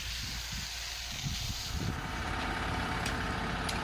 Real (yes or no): yes